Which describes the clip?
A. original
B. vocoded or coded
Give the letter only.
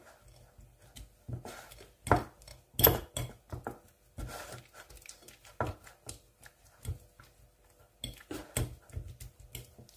A